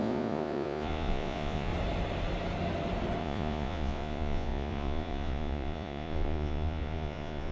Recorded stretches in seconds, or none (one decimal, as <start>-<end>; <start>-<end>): 1.7-3.2